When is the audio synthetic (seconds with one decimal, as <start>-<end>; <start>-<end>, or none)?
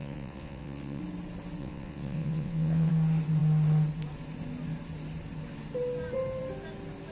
0.0-1.0; 1.6-2.9